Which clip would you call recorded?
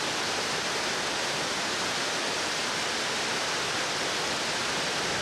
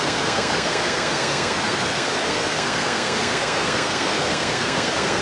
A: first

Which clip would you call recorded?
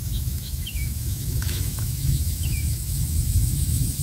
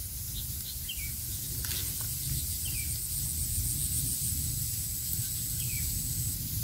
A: second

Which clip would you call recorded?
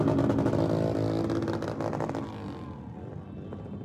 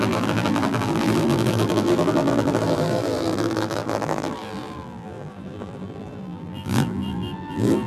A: first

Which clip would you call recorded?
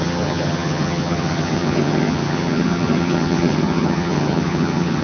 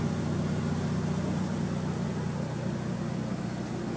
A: second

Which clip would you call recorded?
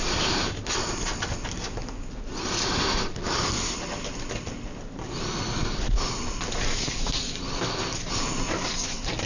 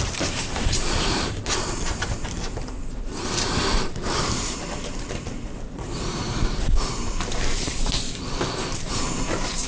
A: first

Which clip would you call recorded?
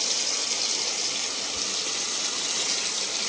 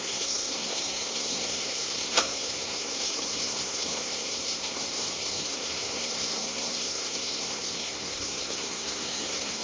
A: first